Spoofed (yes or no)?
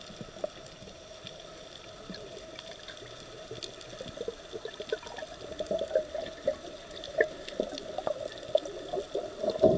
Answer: no